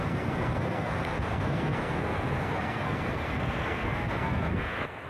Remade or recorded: remade